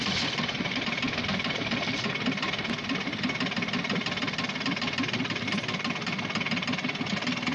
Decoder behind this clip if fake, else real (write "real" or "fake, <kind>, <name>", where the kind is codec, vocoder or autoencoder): real